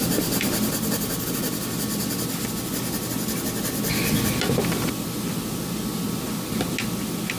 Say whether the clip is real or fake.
real